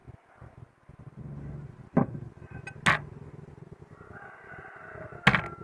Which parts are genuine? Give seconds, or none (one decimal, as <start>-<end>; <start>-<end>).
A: 0.0-5.6